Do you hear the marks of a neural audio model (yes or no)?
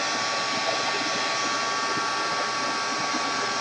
no